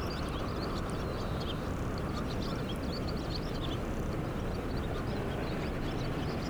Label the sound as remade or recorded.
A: recorded